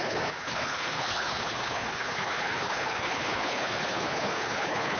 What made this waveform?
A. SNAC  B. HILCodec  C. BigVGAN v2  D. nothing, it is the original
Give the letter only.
B